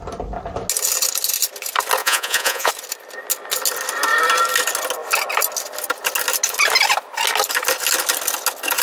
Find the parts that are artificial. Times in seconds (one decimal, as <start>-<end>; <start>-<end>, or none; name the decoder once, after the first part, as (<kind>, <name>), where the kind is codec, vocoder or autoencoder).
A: 2.0-2.7 (vocoder, Vocos)